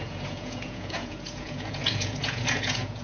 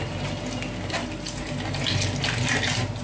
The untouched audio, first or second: second